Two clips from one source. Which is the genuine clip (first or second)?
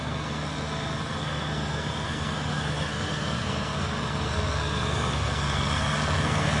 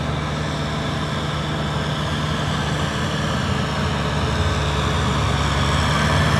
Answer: second